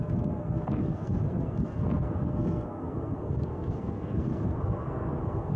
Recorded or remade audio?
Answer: remade